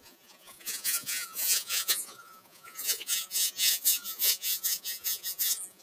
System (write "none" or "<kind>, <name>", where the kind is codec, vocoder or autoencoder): vocoder, Vocos